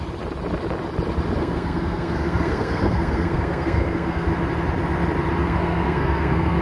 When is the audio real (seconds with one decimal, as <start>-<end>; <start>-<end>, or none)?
0.0-1.4; 4.3-5.4